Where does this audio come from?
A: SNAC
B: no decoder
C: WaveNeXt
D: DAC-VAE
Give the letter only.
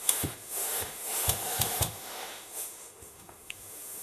D